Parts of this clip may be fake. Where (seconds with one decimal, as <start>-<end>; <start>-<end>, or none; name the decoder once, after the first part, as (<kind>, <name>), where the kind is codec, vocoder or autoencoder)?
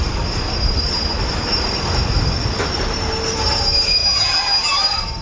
none